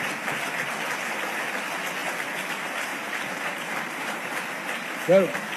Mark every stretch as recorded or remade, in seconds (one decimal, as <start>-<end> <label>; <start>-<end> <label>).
0.0-2.9 recorded; 2.9-4.3 remade; 4.3-5.6 recorded